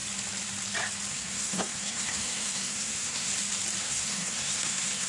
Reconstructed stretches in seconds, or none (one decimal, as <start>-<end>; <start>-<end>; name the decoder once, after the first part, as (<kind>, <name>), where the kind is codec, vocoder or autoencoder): 1.1-3.3 (codec, SNAC); 3.8-5.1